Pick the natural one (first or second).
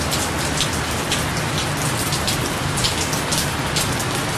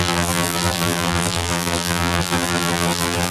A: first